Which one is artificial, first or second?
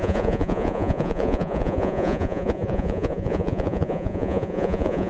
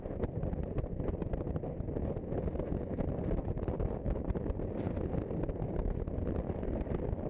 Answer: first